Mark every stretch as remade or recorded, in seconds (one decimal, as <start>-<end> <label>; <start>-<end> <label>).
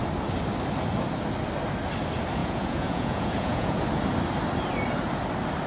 0.0-2.4 recorded; 2.4-3.8 remade; 3.8-5.7 recorded